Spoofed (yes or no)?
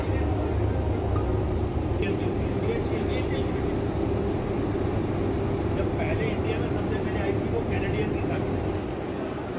no